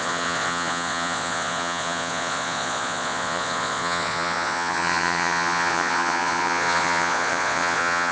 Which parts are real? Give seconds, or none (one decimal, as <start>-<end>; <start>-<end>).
none